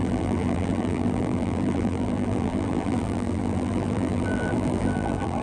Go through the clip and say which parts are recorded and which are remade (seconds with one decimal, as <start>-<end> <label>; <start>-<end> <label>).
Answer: 0.0-5.4 remade